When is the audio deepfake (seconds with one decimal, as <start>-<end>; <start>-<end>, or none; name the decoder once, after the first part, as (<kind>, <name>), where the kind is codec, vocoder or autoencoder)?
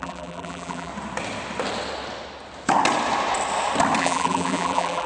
0.0-0.9 (vocoder, BigVGAN v2); 4.0-5.1